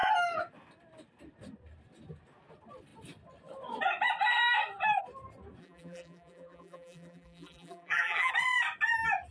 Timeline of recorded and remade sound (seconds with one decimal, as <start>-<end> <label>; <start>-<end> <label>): 0.0-5.6 recorded; 5.6-8.3 remade; 8.3-9.3 recorded